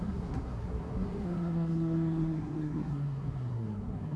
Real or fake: fake